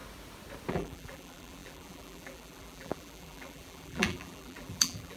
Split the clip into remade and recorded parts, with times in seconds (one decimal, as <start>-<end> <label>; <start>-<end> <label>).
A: 0.0-0.7 recorded; 0.7-5.2 remade